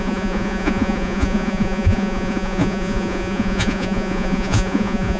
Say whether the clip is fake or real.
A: fake